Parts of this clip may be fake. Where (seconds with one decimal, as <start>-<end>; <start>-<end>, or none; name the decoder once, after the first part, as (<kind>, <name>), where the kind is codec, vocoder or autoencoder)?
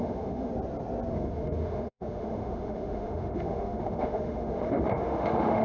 0.0-0.5 (autoencoder, DAC-VAE); 1.1-5.6